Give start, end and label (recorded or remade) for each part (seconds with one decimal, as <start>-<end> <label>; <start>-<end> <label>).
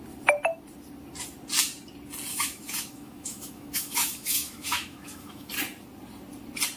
0.0-2.3 recorded; 2.3-5.5 remade; 5.5-6.8 recorded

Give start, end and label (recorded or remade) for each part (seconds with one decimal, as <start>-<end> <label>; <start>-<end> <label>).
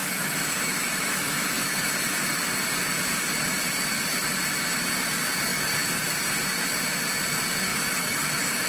0.0-1.9 remade; 1.9-5.5 recorded; 5.5-6.2 remade; 6.2-7.7 recorded; 7.7-8.7 remade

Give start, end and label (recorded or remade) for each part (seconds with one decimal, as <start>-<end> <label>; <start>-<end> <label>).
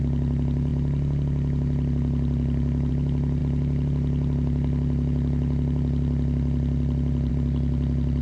0.0-8.2 recorded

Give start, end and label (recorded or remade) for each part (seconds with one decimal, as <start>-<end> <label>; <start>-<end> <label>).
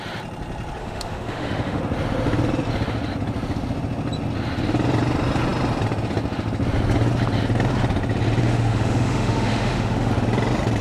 0.0-0.8 recorded; 0.8-1.8 remade; 1.8-8.4 recorded; 8.4-10.1 remade; 10.1-10.8 recorded